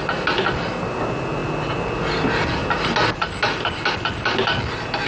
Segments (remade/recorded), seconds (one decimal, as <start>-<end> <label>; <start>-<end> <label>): 0.0-5.1 recorded